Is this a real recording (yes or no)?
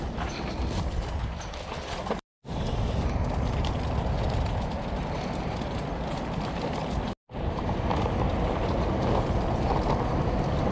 yes